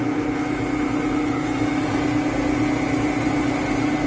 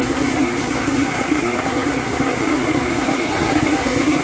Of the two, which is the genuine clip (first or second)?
first